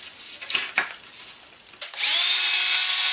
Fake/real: real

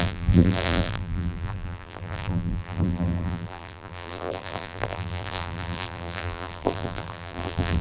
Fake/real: fake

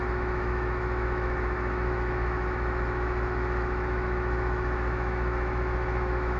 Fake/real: fake